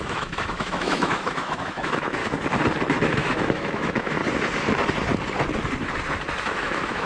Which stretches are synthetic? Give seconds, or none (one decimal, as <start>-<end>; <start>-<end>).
0.0-2.2; 3.0-4.2; 6.4-7.1